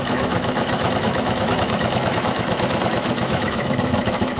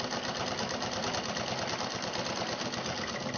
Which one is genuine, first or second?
second